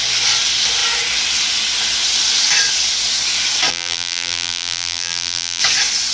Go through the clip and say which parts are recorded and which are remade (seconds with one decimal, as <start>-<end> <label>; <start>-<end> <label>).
0.0-3.7 recorded; 3.7-5.6 remade; 5.6-6.1 recorded

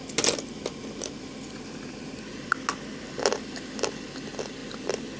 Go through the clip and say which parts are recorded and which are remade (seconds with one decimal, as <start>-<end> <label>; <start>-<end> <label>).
0.0-3.1 recorded; 3.1-5.2 remade

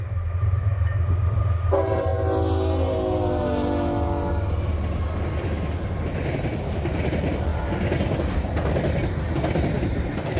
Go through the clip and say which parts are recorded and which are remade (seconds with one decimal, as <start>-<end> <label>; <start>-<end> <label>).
0.0-2.1 remade; 2.1-6.0 recorded; 6.0-7.5 remade; 7.5-9.9 recorded; 9.9-10.4 remade

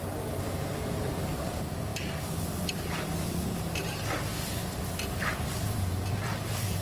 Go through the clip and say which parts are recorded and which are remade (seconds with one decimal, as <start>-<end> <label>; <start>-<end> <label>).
0.0-4.3 remade; 4.3-5.1 recorded; 5.1-6.8 remade

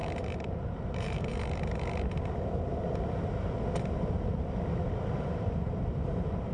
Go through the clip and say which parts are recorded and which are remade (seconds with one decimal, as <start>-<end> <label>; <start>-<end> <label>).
0.0-0.5 recorded; 0.5-1.3 remade; 1.3-5.2 recorded; 5.2-6.5 remade

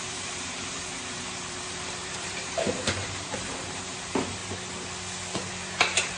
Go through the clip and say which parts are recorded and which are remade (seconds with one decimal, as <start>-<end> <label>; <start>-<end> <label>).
0.0-4.4 remade; 4.4-5.5 recorded; 5.5-6.2 remade